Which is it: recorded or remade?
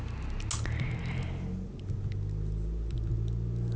recorded